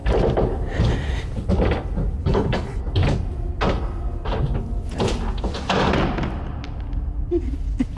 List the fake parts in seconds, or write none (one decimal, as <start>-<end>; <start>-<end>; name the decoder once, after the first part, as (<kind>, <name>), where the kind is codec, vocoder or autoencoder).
2.2-2.8 (codec, HILCodec)